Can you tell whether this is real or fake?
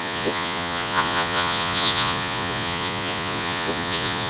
fake